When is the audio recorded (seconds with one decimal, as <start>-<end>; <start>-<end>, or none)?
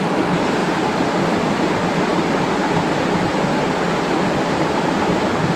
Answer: 0.0-5.6